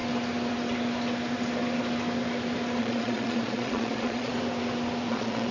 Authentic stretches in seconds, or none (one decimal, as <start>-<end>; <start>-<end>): 0.0-2.8; 4.3-5.1